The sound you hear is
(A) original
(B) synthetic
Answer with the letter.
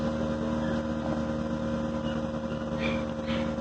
A